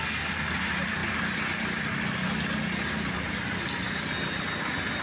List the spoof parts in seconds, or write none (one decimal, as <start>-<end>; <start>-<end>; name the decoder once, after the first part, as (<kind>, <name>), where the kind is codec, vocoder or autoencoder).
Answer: none